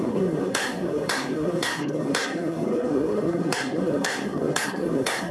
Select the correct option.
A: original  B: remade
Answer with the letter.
B